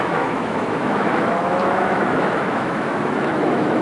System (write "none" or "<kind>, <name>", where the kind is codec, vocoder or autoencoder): autoencoder, DAC-VAE